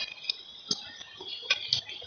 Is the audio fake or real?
real